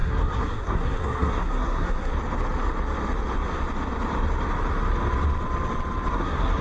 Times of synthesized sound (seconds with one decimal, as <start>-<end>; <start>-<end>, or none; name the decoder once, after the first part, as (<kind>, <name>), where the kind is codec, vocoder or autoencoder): 0.0-2.1 (codec, SNAC); 6.1-6.6